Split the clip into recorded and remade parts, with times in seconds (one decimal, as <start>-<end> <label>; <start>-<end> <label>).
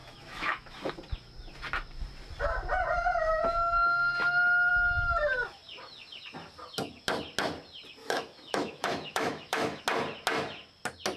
0.0-0.9 remade; 0.9-8.0 recorded; 8.0-9.8 remade; 9.8-11.2 recorded